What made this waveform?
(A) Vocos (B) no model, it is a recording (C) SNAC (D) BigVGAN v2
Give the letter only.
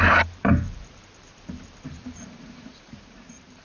D